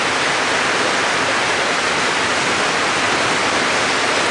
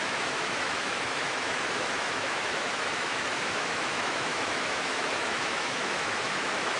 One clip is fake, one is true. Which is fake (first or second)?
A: second